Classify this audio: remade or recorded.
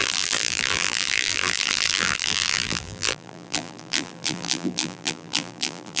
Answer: remade